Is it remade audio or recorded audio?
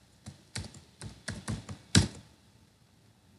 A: recorded